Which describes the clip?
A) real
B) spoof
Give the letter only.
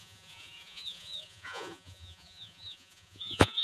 B